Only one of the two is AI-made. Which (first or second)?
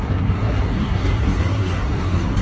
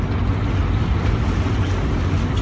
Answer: first